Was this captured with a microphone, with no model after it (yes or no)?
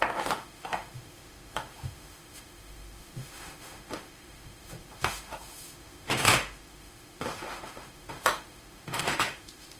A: no